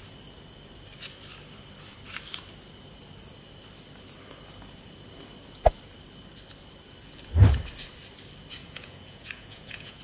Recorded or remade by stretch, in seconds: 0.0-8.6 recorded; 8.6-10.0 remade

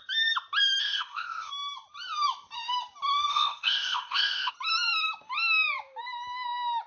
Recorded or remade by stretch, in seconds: 0.0-0.8 recorded; 0.8-1.5 remade; 1.5-3.3 recorded; 3.3-4.5 remade; 4.5-6.9 recorded